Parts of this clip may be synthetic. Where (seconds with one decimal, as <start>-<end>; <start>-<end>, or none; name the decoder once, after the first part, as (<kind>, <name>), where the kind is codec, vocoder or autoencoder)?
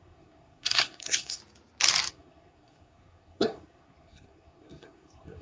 0.0-1.4 (codec, SNAC); 2.1-5.4